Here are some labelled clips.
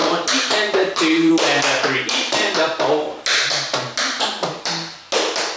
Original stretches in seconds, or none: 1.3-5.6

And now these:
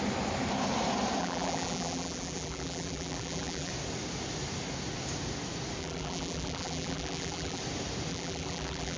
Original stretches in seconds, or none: 0.0-1.2; 3.7-5.8; 7.6-8.1

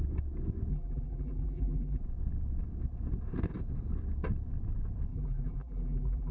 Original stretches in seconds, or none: 0.0-0.7; 2.0-5.1

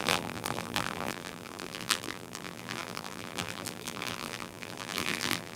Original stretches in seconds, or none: none

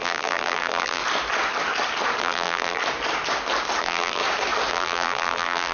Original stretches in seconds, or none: 1.0-2.2; 2.8-3.8; 4.2-4.7

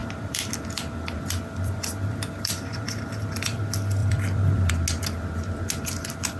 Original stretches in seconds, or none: 3.6-4.0; 4.7-6.4

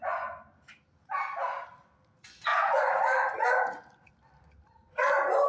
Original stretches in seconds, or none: 0.0-0.7; 1.2-5.5

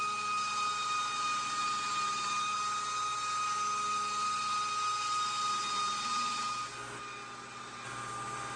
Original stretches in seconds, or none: 0.0-8.6